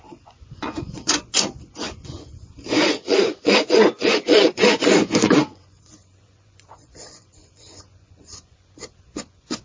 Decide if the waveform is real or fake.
fake